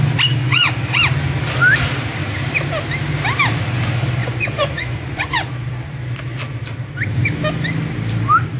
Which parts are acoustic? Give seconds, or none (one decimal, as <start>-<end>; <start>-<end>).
0.0-0.4; 1.0-4.2; 5.5-8.6